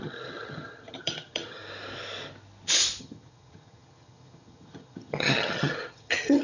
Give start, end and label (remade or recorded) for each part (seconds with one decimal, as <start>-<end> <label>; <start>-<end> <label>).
0.0-1.6 remade; 1.6-3.0 recorded; 3.0-6.4 remade

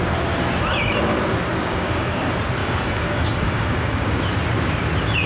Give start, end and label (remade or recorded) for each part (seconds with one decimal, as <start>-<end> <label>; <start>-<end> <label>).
0.0-1.6 recorded; 1.6-2.2 remade; 2.2-2.6 recorded; 2.6-4.2 remade; 4.2-5.3 recorded

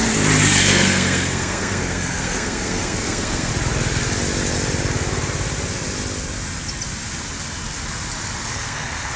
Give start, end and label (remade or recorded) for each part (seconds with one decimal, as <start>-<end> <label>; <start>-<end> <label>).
0.0-0.6 recorded; 0.6-3.5 remade; 3.5-8.5 recorded; 8.5-9.2 remade

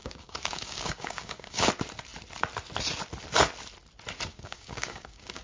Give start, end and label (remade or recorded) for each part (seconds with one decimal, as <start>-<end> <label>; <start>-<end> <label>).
0.0-1.7 remade; 1.7-4.3 recorded; 4.3-5.4 remade

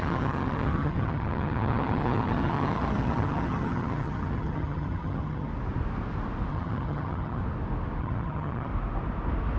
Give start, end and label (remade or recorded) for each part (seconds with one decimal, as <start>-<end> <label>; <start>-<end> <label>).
0.0-5.5 remade; 5.5-6.5 recorded; 6.5-7.4 remade; 7.4-8.0 recorded; 8.0-8.7 remade; 8.7-9.6 recorded